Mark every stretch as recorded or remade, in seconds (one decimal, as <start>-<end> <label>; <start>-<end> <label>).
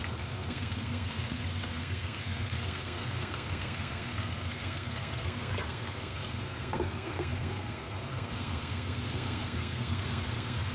0.0-10.7 remade